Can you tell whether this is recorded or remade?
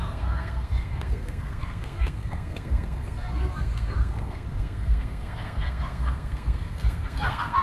remade